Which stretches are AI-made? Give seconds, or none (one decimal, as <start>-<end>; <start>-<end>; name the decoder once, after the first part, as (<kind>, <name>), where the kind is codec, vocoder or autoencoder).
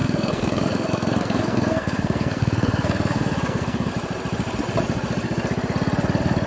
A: 0.0-3.9 (codec, SNAC)